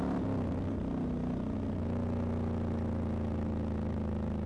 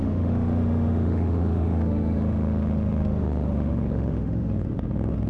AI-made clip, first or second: second